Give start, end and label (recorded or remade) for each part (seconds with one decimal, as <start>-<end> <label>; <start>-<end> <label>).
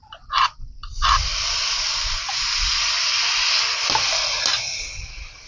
0.0-5.5 recorded